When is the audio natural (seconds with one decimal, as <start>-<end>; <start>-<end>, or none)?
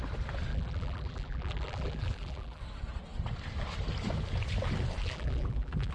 0.0-0.5; 2.6-5.0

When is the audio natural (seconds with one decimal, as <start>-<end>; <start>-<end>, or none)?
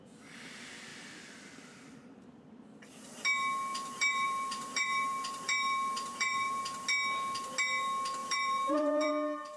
0.0-0.9; 2.2-3.7; 6.6-8.2; 9.1-9.6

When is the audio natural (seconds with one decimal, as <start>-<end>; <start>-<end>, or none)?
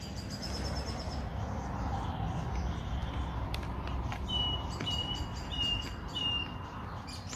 0.0-7.4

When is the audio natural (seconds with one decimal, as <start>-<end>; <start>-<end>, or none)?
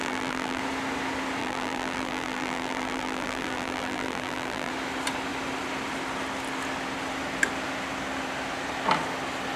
0.6-1.4; 4.7-9.6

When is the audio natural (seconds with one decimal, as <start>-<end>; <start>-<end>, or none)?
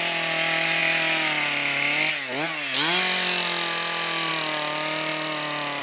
0.0-5.8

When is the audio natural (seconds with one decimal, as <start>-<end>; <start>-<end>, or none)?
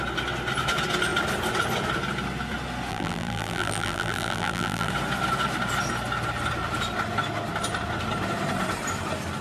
0.0-2.9; 4.9-9.4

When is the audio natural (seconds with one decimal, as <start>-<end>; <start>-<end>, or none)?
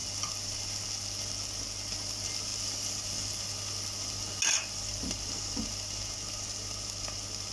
0.8-7.5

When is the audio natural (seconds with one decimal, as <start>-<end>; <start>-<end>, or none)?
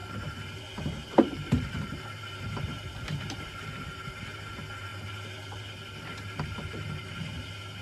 3.6-7.8